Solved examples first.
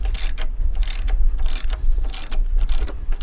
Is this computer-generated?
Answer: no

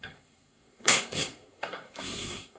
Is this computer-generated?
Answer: yes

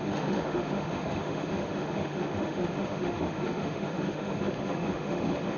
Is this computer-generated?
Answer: yes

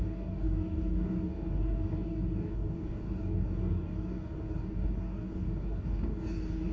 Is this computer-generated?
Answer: yes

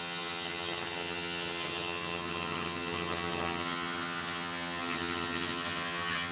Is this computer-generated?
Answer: yes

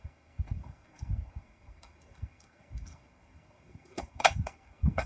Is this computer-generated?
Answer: yes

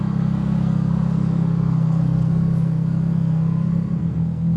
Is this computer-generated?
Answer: yes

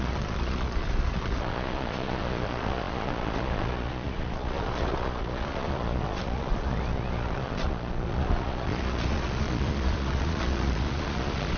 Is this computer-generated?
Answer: yes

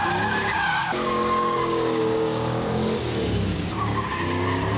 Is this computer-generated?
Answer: yes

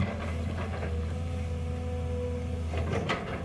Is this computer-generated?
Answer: no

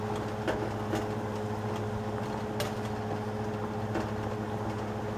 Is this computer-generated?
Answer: no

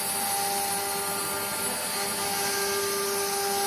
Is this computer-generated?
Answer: no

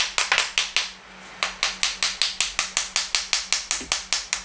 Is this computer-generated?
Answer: no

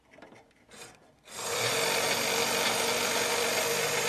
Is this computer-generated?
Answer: no